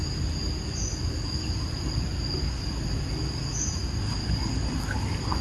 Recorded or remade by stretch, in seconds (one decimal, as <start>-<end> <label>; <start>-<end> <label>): 0.0-1.3 recorded; 1.3-2.1 remade; 2.1-2.7 recorded; 2.7-3.8 remade; 3.8-4.5 recorded; 4.5-5.4 remade